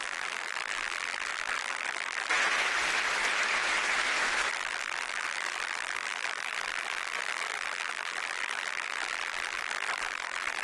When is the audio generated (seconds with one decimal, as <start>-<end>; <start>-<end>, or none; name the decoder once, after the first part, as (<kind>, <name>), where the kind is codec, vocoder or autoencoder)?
0.0-2.3 (vocoder, BigVGAN v2); 4.5-10.6